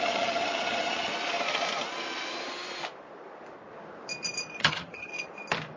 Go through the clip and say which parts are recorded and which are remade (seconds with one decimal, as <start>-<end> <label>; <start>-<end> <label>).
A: 0.0-1.1 remade; 1.1-4.6 recorded; 4.6-5.1 remade; 5.1-5.8 recorded